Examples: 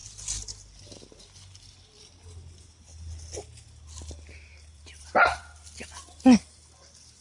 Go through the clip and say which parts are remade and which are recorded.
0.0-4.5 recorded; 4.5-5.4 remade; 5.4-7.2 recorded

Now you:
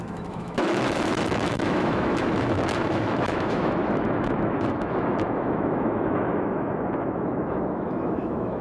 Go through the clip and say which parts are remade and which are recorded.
0.0-8.6 remade

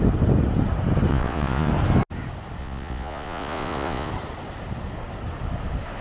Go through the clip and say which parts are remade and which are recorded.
0.0-1.1 recorded; 1.1-1.7 remade; 1.7-2.6 recorded; 2.6-4.1 remade; 4.1-6.0 recorded

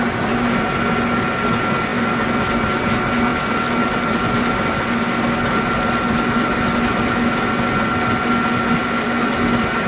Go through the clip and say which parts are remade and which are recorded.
0.0-9.9 recorded

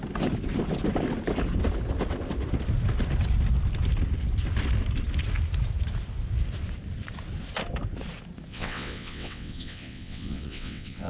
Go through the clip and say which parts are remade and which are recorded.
0.0-8.5 recorded; 8.5-11.1 remade

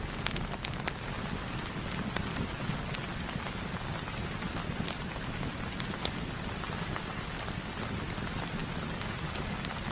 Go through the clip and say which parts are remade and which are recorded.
0.0-9.9 recorded

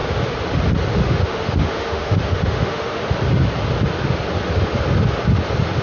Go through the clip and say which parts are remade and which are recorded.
0.0-1.0 recorded; 1.0-3.0 remade; 3.0-5.8 recorded